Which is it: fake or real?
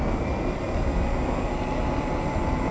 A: real